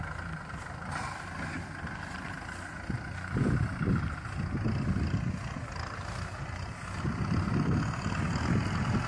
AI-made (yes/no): no